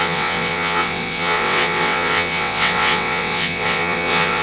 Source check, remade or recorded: remade